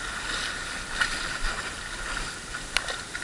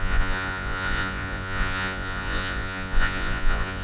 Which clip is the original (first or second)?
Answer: first